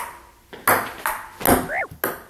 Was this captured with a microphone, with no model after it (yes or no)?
yes